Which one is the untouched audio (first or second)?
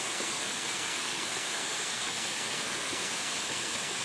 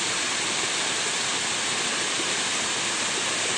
second